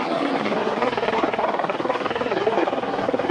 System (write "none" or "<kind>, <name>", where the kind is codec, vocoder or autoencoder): codec, SNAC